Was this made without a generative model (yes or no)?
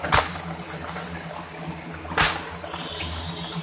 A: yes